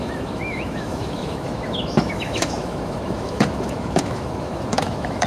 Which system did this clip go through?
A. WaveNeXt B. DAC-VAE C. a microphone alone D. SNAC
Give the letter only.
B